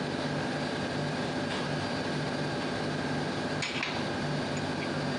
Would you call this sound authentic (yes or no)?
yes